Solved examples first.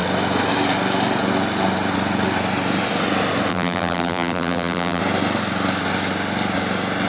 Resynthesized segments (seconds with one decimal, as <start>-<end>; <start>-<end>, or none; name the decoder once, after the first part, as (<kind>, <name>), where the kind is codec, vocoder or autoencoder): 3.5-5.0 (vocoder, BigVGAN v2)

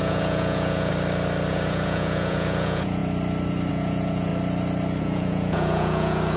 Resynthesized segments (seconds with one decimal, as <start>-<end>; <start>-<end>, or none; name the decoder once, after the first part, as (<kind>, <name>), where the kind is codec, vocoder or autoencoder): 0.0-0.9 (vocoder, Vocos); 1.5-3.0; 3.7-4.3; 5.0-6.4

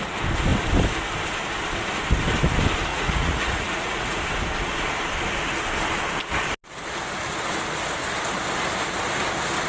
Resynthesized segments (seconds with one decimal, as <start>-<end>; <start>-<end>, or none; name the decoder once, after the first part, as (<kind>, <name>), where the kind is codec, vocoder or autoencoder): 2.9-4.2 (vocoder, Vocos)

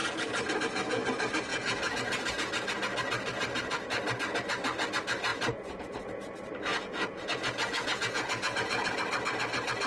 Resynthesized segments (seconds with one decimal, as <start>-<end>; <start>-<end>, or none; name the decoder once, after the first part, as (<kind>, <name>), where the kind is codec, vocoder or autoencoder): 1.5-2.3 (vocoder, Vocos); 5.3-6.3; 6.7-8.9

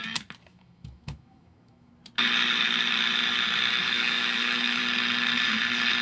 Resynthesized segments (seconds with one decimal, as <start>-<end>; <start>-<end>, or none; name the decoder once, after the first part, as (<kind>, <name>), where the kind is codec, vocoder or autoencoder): 0.5-1.9 (autoencoder, DAC-VAE); 3.8-4.8